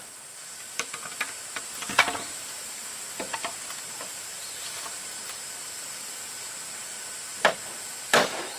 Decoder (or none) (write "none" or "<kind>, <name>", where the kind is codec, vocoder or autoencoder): vocoder, BigVGAN v2